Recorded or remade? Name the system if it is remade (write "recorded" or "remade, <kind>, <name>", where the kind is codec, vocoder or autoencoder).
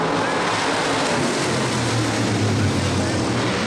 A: recorded